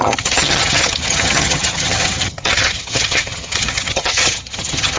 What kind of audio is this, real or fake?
fake